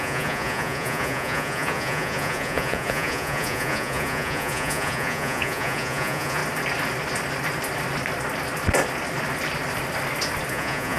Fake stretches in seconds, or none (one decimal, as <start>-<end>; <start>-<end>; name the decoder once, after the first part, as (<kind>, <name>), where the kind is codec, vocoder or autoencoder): 0.0-6.4 (vocoder, Vocos); 10.5-11.0